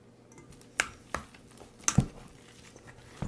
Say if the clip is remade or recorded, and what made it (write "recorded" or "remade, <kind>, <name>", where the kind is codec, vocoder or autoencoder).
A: recorded